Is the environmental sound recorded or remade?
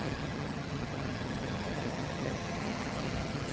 remade